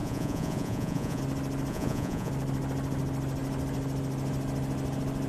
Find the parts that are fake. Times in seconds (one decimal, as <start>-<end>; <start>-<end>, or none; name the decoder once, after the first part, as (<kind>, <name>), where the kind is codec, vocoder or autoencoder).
0.0-1.2 (vocoder, Vocos); 1.7-2.3